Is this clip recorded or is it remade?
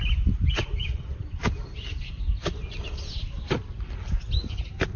recorded